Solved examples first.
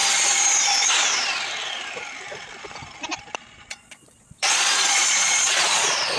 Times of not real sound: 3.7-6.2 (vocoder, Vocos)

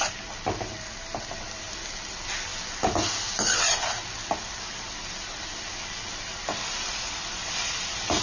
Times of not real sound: none

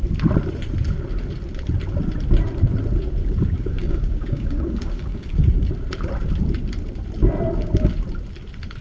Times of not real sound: 3.2-5.7 (codec, DAC)

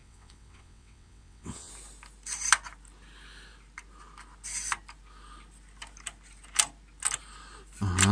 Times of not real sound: 0.0-1.7 (vocoder, WaveNeXt)